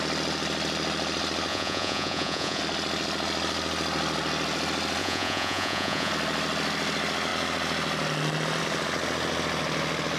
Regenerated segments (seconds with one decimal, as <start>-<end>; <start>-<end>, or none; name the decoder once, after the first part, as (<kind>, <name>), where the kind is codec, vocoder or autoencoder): 1.5-2.6 (vocoder, Vocos); 5.0-6.1